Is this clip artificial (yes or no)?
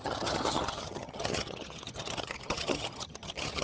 yes